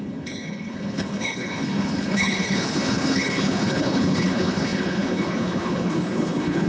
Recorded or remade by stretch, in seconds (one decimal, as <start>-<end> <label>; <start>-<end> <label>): 0.0-6.7 remade